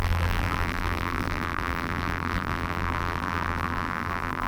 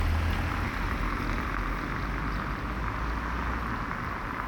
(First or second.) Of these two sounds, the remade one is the first